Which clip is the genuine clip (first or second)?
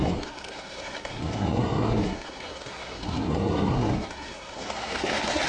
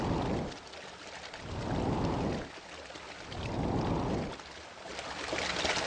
second